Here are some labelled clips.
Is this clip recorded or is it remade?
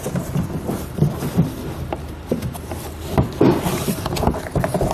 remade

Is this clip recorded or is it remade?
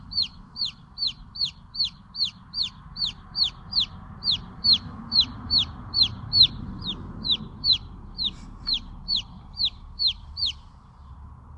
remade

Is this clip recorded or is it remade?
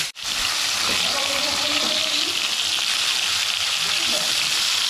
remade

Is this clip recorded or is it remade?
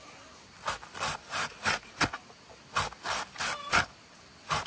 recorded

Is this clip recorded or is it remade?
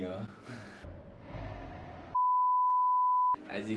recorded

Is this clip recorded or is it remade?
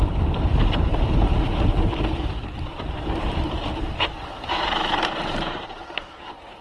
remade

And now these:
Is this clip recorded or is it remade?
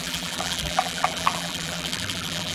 remade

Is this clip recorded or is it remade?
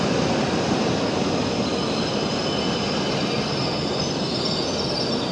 recorded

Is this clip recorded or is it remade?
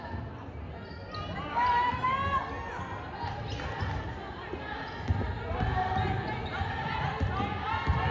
recorded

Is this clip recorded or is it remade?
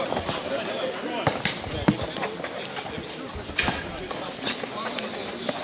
recorded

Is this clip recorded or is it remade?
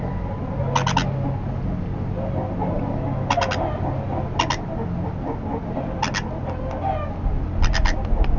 recorded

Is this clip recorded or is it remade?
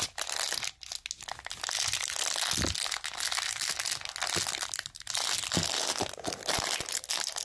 recorded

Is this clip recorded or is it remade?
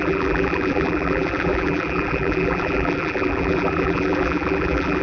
remade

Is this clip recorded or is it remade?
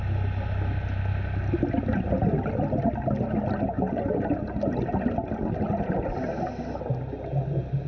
recorded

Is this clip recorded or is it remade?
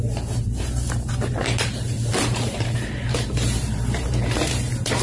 remade